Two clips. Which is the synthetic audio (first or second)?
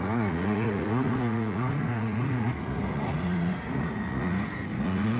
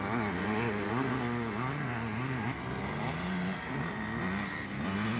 first